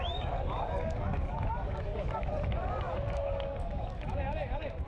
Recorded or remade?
remade